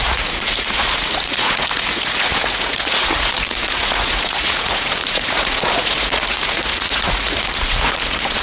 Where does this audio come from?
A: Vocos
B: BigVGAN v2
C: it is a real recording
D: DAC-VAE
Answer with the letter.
A